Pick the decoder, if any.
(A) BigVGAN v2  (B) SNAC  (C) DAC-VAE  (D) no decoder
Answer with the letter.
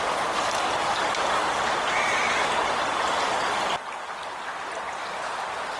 D